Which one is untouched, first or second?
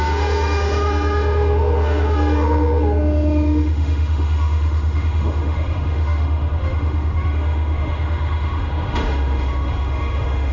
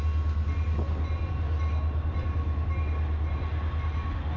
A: second